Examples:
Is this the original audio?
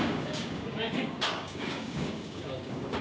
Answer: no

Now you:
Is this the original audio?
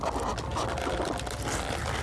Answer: yes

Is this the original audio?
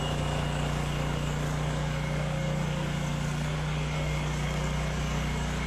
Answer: no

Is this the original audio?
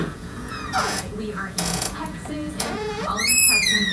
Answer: no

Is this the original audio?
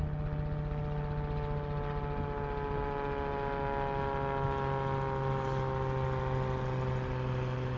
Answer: yes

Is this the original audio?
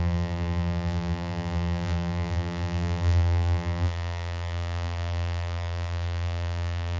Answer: no